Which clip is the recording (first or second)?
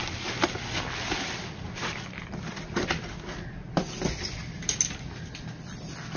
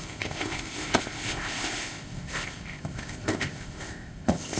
first